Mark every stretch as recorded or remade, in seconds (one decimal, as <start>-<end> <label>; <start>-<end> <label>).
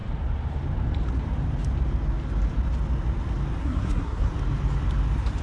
0.0-3.6 recorded; 3.6-4.3 remade; 4.3-5.4 recorded